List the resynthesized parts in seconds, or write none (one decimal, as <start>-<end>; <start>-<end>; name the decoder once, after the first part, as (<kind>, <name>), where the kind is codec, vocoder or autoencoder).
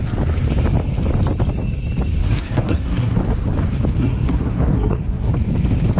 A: 2.2-3.2 (codec, SNAC); 4.0-5.3